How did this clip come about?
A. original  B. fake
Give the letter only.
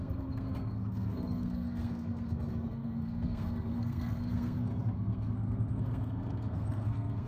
B